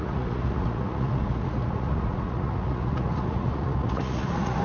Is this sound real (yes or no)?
no